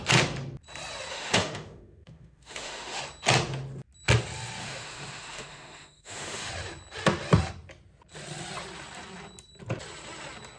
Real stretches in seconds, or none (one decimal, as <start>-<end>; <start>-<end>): 0.0-1.1; 3.0-4.6; 6.5-10.6